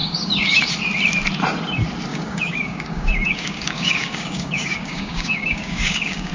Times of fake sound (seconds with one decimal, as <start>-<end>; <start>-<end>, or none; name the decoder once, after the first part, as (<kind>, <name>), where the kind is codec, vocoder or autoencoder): 0.0-0.7 (codec, DAC); 2.1-6.3